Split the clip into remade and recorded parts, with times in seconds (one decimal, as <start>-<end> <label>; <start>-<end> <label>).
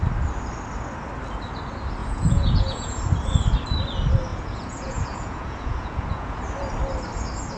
0.0-2.0 recorded; 2.0-3.0 remade; 3.0-4.3 recorded; 4.3-6.4 remade; 6.4-7.6 recorded